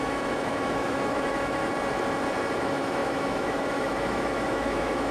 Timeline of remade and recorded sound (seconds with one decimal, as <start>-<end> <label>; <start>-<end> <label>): 0.0-1.6 remade; 1.6-2.6 recorded; 2.6-5.1 remade